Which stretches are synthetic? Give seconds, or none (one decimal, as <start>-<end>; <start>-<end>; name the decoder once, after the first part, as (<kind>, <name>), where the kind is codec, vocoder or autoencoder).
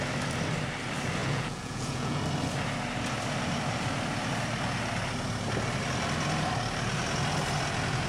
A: 1.2-2.2 (vocoder, Vocos)